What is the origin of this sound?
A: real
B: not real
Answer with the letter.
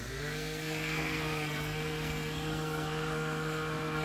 B